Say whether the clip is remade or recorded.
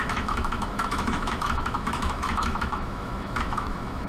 remade